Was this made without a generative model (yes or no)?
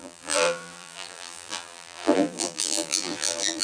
no